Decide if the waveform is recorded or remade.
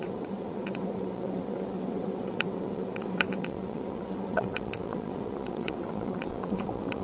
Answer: remade